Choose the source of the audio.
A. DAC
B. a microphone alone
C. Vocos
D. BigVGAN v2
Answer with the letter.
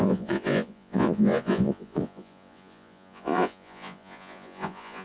C